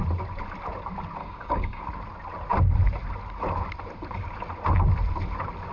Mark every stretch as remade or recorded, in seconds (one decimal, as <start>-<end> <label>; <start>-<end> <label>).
0.0-1.2 recorded; 1.2-1.8 remade; 1.8-5.7 recorded